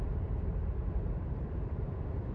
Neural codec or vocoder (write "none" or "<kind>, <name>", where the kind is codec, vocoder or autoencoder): vocoder, BigVGAN v2